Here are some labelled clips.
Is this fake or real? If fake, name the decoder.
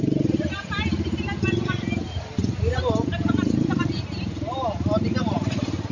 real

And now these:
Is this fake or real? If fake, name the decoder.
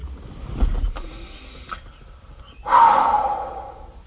real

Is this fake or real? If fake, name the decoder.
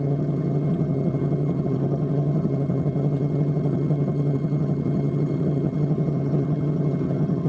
fake, vocoder, HiFi-GAN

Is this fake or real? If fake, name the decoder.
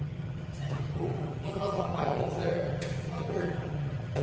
fake, vocoder, HiFi-GAN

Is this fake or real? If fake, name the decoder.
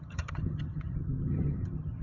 fake, vocoder, HiFi-GAN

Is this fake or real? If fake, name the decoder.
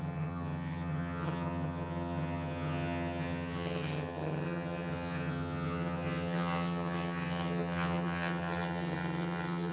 fake, vocoder, HiFi-GAN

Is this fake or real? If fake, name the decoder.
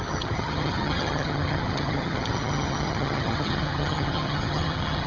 fake, vocoder, HiFi-GAN